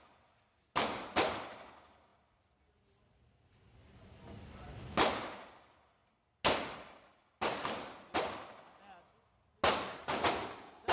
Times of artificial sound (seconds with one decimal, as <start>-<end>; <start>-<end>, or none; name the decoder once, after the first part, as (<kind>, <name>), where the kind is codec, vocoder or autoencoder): none